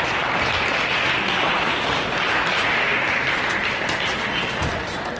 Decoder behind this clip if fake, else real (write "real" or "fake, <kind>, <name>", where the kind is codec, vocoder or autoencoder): real